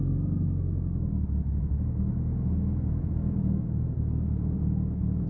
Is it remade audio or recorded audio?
remade